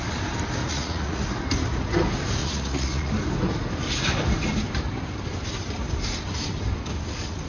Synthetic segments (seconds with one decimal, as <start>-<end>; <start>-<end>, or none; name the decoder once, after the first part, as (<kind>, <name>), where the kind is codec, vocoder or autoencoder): 0.6-1.2 (vocoder, Vocos); 2.4-3.1